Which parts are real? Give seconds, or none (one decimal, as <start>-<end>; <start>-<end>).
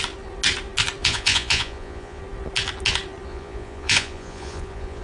0.0-1.0; 2.2-3.3